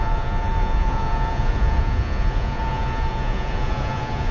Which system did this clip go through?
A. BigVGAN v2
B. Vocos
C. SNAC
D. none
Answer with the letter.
B